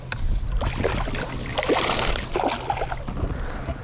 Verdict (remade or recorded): recorded